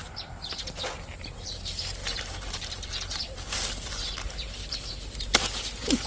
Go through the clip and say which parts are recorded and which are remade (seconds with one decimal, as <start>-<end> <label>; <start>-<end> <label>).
0.0-2.0 recorded; 2.0-4.9 remade; 4.9-6.1 recorded